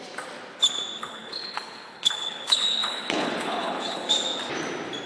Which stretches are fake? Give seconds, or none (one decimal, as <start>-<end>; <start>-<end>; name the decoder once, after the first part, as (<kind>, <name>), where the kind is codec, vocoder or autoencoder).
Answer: 1.0-4.1 (codec, HILCodec)